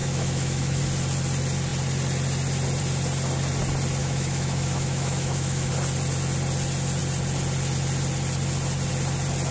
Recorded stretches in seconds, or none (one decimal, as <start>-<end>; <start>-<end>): 0.8-4.0; 5.7-9.5